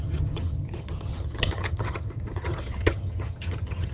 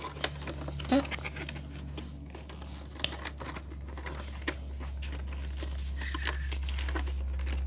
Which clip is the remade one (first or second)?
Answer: first